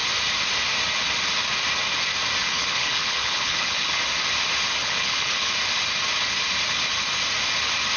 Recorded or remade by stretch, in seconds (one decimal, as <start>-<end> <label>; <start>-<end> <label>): 0.0-2.4 recorded; 2.4-4.0 remade; 4.0-4.8 recorded; 4.8-5.5 remade; 5.5-8.0 recorded